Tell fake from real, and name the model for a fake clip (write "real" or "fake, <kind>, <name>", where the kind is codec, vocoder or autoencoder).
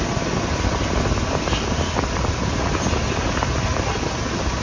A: real